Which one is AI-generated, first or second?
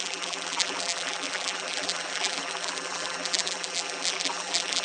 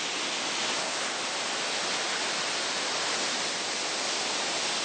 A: first